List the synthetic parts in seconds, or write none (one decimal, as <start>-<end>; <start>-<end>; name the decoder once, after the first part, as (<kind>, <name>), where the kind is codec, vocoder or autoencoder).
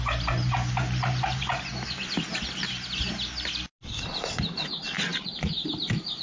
5.1-5.7 (vocoder, BigVGAN v2)